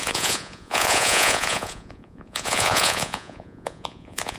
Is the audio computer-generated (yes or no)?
yes